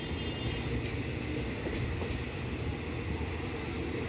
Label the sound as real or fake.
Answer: real